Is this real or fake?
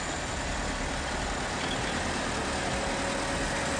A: real